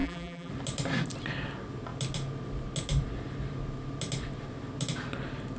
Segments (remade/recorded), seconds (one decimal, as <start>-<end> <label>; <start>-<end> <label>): 0.0-0.5 remade; 0.5-5.6 recorded